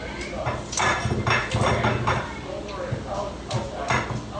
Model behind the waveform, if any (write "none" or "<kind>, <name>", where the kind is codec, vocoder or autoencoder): none